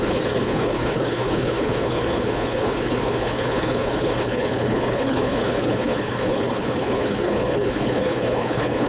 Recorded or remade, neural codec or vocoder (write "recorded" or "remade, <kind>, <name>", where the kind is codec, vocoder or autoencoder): remade, codec, HILCodec